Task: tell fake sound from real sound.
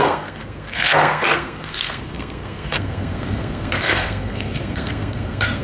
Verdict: fake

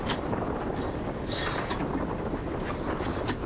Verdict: real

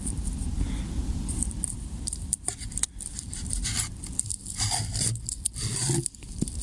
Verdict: real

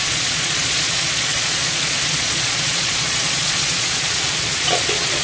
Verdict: fake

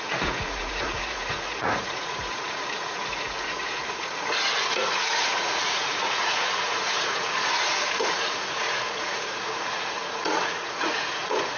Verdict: fake